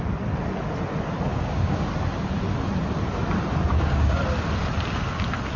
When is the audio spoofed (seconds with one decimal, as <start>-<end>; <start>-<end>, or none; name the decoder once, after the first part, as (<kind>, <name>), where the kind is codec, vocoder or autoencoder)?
1.3-1.9 (codec, DAC); 3.7-4.2